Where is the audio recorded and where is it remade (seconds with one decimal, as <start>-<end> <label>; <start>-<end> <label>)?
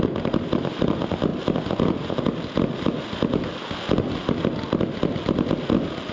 0.0-6.1 recorded